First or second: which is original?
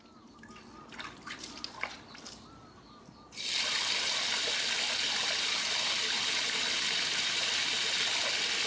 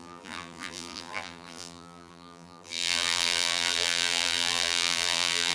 first